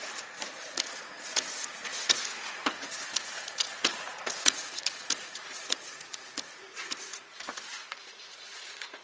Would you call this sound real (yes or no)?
no